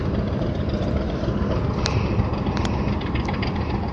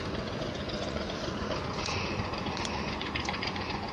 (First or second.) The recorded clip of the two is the first